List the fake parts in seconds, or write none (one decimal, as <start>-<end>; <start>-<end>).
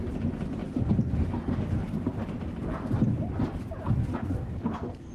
4.2-5.1